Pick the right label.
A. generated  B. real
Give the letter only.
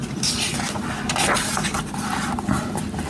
B